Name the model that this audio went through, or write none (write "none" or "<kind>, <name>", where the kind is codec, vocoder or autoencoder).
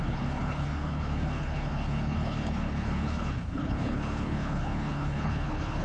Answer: codec, HILCodec